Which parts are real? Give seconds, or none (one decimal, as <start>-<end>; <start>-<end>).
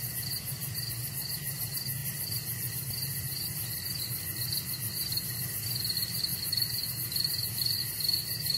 0.0-8.6